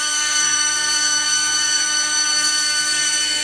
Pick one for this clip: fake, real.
fake